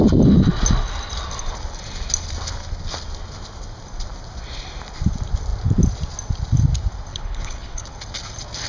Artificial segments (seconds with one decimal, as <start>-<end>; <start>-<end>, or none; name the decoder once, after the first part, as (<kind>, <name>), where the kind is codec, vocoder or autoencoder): 7.1-7.9 (codec, HILCodec)